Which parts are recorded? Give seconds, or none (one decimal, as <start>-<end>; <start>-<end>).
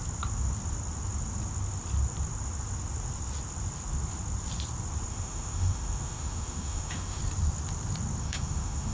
0.0-5.1; 7.2-8.2